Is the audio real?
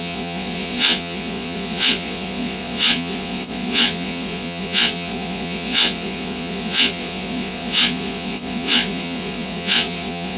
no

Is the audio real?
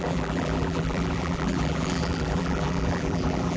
no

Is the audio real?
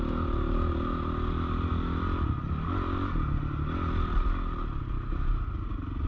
yes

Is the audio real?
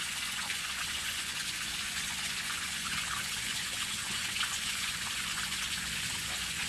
no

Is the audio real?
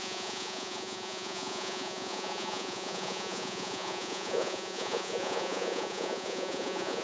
no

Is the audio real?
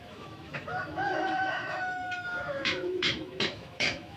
no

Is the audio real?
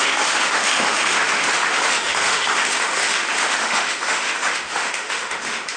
no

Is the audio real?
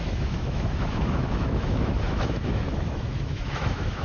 no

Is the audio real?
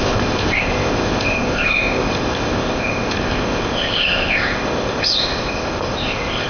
no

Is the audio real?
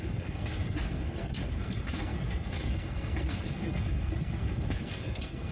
no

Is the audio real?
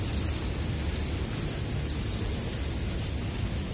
yes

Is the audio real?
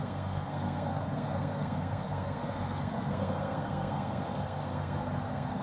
no